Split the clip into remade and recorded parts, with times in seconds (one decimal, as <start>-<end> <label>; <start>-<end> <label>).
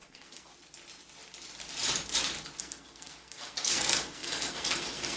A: 0.0-0.5 remade; 0.5-2.6 recorded; 2.6-5.2 remade